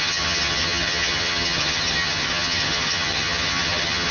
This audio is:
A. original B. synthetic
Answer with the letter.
B